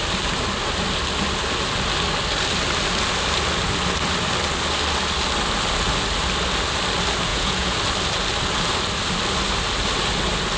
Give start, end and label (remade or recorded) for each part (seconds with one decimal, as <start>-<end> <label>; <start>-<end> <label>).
0.0-7.3 recorded; 7.3-7.8 remade; 7.8-10.6 recorded